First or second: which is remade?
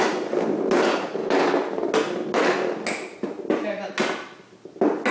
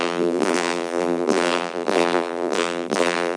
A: second